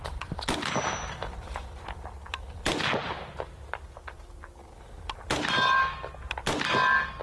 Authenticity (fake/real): fake